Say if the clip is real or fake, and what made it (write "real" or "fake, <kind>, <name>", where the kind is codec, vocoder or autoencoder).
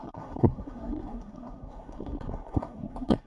fake, codec, SNAC